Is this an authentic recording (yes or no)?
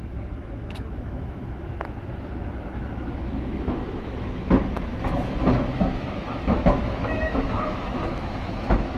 no